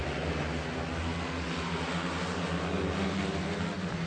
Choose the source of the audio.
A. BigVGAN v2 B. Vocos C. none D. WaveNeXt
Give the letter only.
C